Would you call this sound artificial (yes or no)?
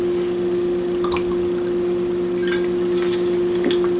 no